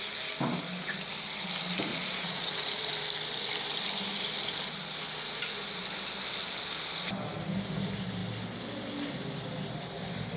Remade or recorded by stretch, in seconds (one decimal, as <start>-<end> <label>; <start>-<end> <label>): 0.0-1.9 recorded; 1.9-2.9 remade; 2.9-10.4 recorded